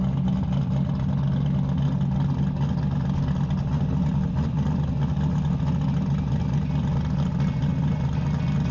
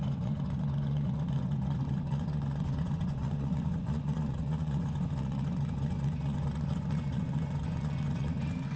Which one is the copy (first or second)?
second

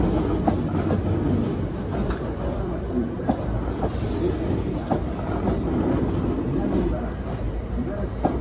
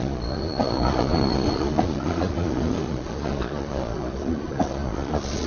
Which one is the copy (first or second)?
second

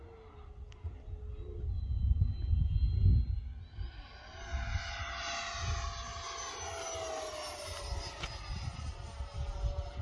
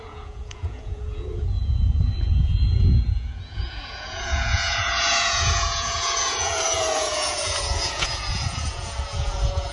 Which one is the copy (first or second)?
second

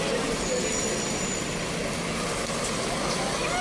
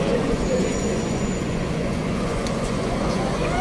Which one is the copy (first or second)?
second